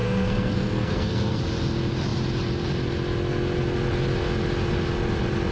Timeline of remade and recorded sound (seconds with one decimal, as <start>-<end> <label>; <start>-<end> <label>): 0.0-1.4 remade; 1.4-5.5 recorded